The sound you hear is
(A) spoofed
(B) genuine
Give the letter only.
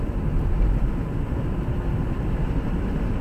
B